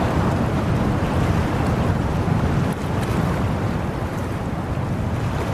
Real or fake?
real